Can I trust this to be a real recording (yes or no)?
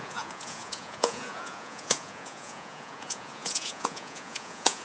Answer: no